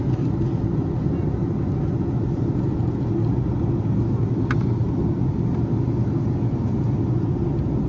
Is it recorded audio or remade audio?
recorded